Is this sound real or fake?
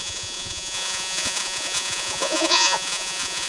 fake